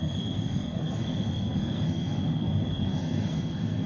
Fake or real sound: fake